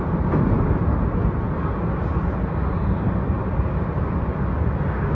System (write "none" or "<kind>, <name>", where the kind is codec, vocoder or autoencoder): none